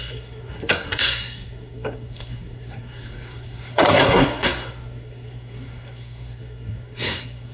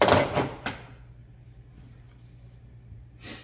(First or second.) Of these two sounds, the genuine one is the second